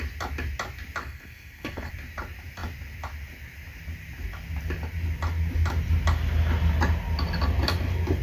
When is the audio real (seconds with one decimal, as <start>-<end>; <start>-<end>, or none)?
0.0-1.0; 1.9-8.2